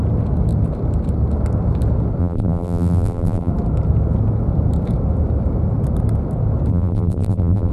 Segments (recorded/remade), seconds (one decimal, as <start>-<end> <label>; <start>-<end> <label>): 0.0-2.2 recorded; 2.2-3.5 remade; 3.5-6.7 recorded; 6.7-7.7 remade